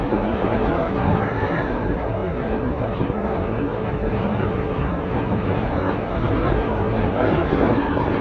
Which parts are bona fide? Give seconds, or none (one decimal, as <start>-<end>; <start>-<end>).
none